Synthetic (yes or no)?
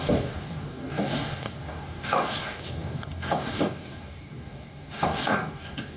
yes